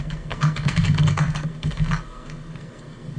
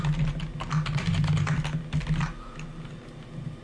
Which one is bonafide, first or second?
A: second